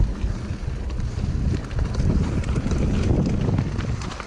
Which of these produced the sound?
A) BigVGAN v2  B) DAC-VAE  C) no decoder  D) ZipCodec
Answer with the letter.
C